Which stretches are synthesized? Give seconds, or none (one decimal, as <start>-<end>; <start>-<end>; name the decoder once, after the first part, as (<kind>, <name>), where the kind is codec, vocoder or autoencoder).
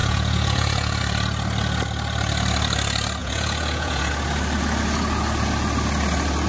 0.0-1.0 (vocoder, Vocos); 3.2-4.1